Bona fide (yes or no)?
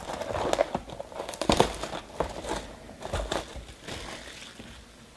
yes